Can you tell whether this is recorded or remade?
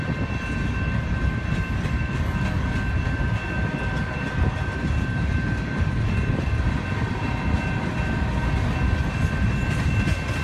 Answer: recorded